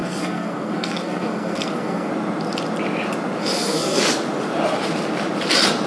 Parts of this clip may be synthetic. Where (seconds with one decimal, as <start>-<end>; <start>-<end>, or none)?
0.0-2.1; 3.4-4.0